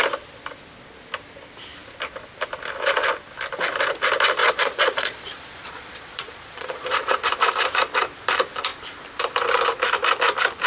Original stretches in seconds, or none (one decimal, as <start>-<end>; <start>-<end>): 0.0-4.4; 7.1-10.7